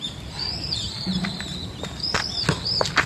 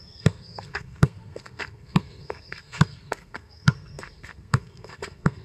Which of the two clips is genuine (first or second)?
first